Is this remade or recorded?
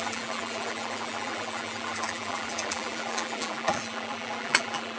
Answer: remade